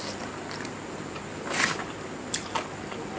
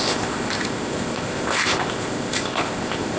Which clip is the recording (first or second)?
first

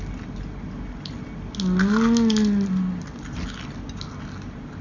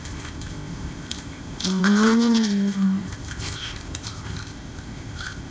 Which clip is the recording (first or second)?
first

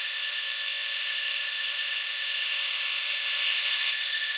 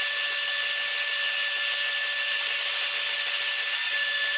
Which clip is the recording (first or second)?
second